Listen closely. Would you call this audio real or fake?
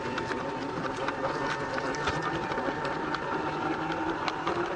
real